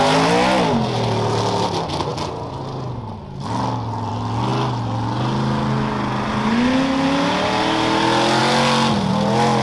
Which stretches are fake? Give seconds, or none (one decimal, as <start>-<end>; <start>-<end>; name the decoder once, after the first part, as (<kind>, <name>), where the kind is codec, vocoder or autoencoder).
none